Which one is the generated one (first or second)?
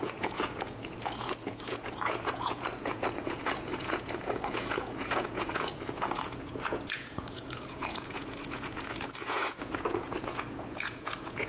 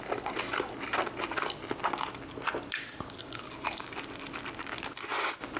first